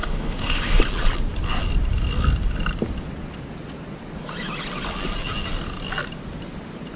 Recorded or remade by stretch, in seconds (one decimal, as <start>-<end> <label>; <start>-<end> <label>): 0.0-0.8 remade; 0.8-7.0 recorded